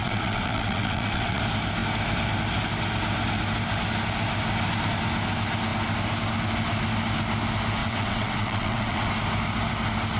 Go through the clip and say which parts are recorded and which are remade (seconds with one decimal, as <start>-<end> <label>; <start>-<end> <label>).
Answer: 0.0-1.4 remade; 1.4-7.8 recorded; 7.8-9.1 remade; 9.1-10.2 recorded